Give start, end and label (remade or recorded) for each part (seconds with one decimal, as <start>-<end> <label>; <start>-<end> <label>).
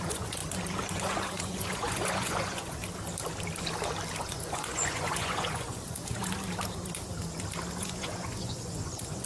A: 0.0-0.4 remade; 0.4-0.9 recorded; 0.9-2.8 remade; 2.8-4.2 recorded; 4.2-6.2 remade; 6.2-7.8 recorded; 7.8-9.3 remade